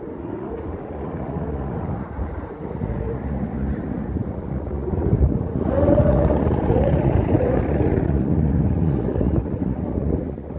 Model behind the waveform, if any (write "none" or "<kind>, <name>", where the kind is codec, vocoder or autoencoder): vocoder, Vocos